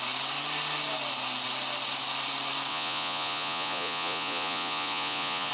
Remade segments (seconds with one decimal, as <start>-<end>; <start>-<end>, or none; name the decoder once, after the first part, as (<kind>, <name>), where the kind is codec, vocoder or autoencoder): 2.7-5.5 (vocoder, Vocos)